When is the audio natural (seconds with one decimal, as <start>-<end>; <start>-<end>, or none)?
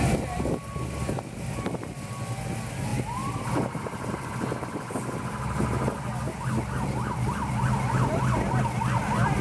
0.0-9.4